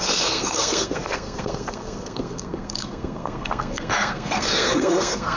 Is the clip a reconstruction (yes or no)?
yes